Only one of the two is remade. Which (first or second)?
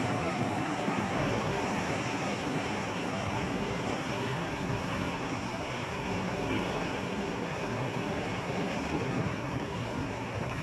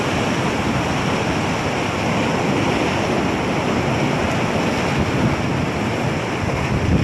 first